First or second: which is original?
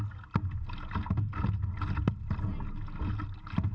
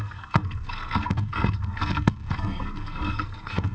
first